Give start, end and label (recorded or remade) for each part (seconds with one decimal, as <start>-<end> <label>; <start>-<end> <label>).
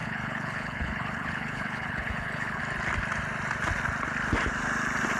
0.0-2.6 remade; 2.6-5.2 recorded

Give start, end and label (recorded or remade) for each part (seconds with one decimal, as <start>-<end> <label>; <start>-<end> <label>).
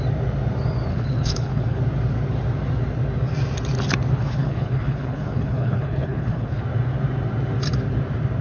0.0-0.9 recorded; 0.9-1.8 remade; 1.8-4.2 recorded; 4.2-6.6 remade; 6.6-8.4 recorded